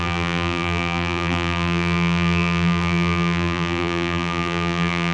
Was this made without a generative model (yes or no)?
no